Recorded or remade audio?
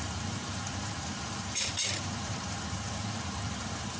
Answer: remade